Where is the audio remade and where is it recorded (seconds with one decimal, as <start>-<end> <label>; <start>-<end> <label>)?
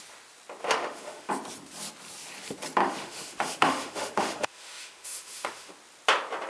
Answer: 0.0-0.6 recorded; 0.6-1.3 remade; 1.3-2.8 recorded; 2.8-5.7 remade; 5.7-6.5 recorded